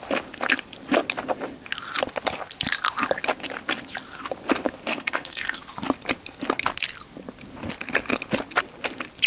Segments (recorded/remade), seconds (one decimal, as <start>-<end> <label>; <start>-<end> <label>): 0.0-4.9 recorded; 4.9-5.6 remade; 5.6-9.3 recorded